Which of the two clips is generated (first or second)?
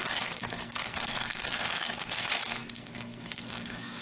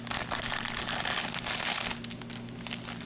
first